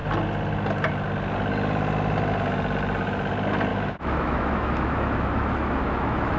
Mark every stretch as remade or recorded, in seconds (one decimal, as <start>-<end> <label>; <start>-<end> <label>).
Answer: 0.0-3.7 recorded; 3.7-6.4 remade